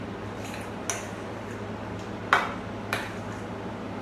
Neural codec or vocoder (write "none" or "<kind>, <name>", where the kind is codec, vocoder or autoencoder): none